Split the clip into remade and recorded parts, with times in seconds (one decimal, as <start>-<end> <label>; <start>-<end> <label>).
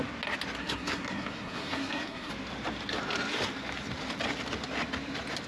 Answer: 0.0-0.6 recorded; 0.6-2.3 remade; 2.3-5.5 recorded